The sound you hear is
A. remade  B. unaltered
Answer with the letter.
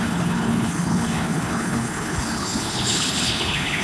A